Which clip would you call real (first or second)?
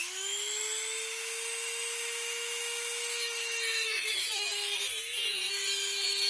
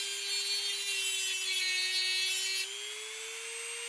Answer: second